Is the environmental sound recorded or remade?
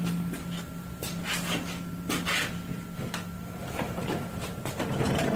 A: remade